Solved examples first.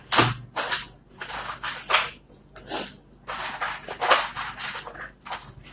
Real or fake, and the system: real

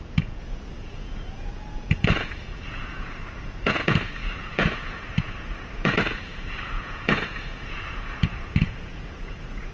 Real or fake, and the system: fake, vocoder, Vocos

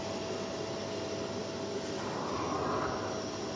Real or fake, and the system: real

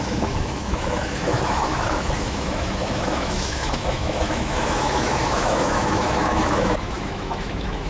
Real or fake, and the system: fake, autoencoder, DAC-VAE